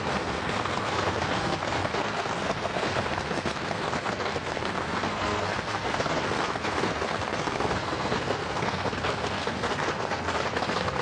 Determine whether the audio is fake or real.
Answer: fake